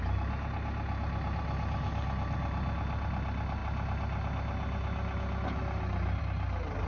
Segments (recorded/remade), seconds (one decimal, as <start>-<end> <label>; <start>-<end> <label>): 0.0-6.9 recorded